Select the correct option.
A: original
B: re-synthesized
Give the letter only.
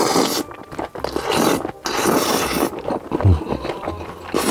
A